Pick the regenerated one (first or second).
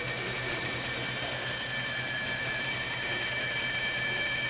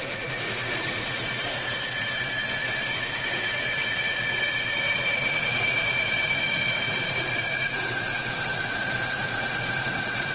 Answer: second